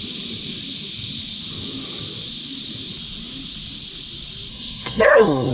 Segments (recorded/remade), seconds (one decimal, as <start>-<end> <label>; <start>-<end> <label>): 0.0-4.5 recorded; 4.5-5.5 remade